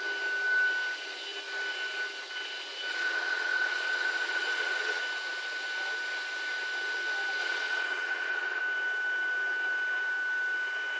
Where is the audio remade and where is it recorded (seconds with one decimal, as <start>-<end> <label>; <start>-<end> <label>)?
0.0-2.9 recorded; 2.9-5.0 remade; 5.0-7.4 recorded; 7.4-8.6 remade; 8.6-11.0 recorded